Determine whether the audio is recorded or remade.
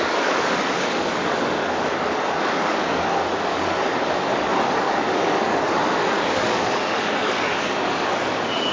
remade